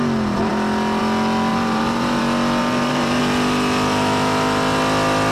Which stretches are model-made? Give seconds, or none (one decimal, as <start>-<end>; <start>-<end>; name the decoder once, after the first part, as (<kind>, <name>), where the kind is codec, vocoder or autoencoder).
1.5-2.2 (vocoder, BigVGAN v2); 2.6-3.2